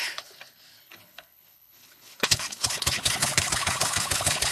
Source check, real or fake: fake